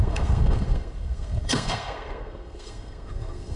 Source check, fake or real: fake